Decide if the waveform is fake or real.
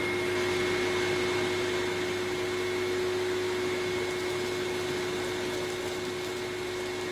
real